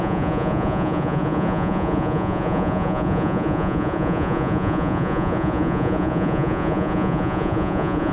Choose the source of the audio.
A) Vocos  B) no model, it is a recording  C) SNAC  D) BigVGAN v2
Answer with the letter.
A